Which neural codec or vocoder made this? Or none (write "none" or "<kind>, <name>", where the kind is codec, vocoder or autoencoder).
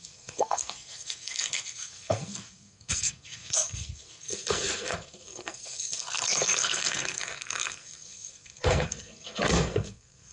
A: codec, SNAC